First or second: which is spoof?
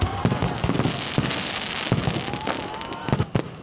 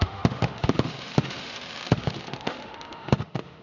second